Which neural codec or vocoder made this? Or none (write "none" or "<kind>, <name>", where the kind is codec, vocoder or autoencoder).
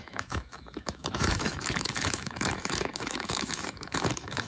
autoencoder, DAC-VAE